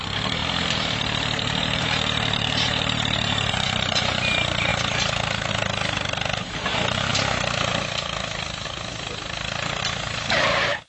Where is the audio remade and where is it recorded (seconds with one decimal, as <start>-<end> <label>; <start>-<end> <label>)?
0.0-0.4 recorded; 0.4-4.0 remade; 4.0-10.9 recorded